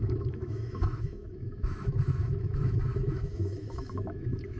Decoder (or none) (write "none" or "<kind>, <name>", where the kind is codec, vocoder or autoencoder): autoencoder, DAC-VAE